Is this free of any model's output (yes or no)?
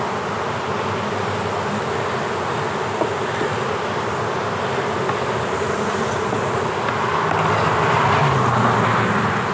yes